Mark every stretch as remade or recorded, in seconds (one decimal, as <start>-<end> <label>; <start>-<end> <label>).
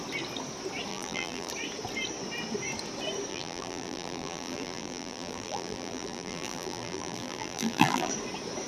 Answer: 0.0-0.9 recorded; 0.9-1.5 remade; 1.5-3.3 recorded; 3.3-8.1 remade; 8.1-8.7 recorded